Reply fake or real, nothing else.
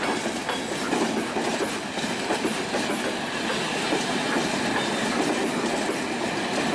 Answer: real